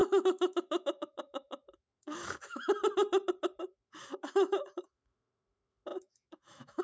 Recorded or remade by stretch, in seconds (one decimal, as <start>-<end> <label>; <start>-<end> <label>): 0.0-2.8 remade; 2.8-3.6 recorded; 3.6-6.8 remade